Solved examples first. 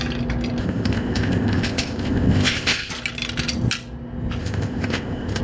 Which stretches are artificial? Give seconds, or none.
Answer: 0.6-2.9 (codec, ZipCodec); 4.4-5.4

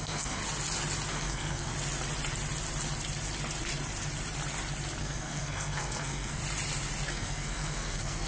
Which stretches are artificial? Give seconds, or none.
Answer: 0.0-0.4 (codec, SNAC); 1.1-1.7; 5.0-6.4; 7.1-8.3

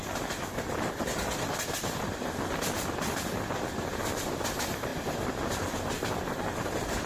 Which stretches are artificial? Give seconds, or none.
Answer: none